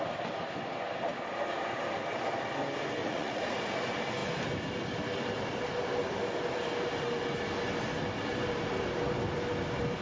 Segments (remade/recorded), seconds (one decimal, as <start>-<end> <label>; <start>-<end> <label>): 0.0-3.0 recorded; 3.0-3.7 remade; 3.7-10.0 recorded